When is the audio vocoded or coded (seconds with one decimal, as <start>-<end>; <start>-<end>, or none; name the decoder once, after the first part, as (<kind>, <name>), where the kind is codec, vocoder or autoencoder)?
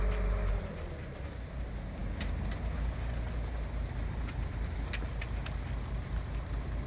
none